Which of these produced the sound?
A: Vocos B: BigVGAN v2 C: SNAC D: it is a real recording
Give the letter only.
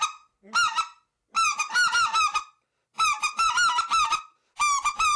D